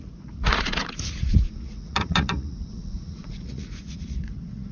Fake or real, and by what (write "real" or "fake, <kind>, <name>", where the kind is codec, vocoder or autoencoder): fake, vocoder, Vocos